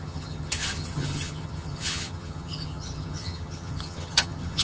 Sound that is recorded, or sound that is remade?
remade